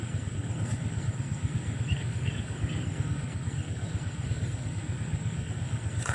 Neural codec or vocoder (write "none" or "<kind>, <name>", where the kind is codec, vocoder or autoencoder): codec, SNAC